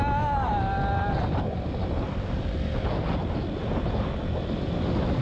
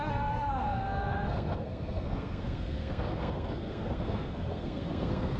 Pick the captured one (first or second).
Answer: first